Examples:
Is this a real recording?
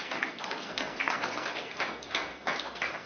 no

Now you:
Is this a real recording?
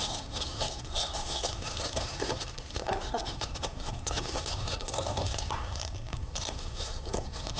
no